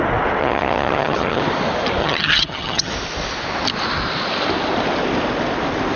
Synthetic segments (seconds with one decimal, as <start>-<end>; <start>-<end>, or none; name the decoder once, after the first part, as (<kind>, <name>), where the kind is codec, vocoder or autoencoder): 0.4-1.4 (vocoder, HiFi-GAN); 2.0-2.9